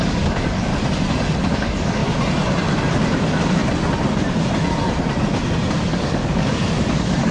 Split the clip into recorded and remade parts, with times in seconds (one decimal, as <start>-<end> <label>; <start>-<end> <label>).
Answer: 0.0-0.7 remade; 0.7-1.4 recorded; 1.4-2.0 remade; 2.0-3.2 recorded; 3.2-3.6 remade; 3.6-5.8 recorded; 5.8-7.3 remade